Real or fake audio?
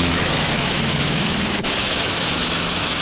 fake